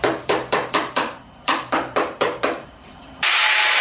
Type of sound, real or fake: fake